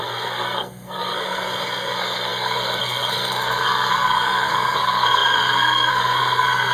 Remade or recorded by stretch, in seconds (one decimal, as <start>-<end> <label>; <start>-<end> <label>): 0.0-6.7 remade